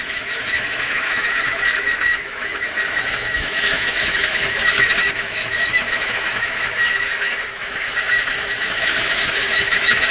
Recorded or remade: remade